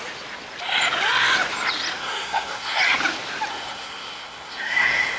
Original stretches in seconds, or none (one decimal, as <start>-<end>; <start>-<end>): 0.0-2.0; 2.8-3.5